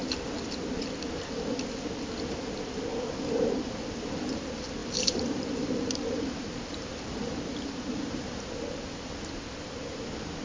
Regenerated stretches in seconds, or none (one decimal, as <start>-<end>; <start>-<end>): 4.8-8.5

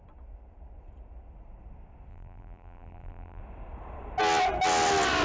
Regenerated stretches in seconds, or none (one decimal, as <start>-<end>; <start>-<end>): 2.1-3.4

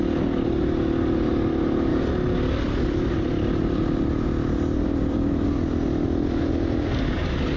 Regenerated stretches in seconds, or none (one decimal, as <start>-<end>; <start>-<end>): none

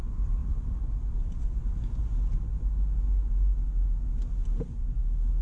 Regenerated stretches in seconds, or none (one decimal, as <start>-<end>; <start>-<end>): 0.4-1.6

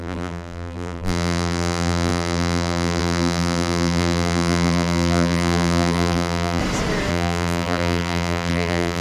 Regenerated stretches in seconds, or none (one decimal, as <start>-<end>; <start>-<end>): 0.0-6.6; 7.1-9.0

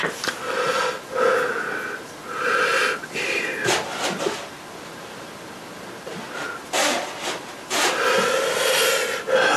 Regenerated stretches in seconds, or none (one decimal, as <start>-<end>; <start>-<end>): none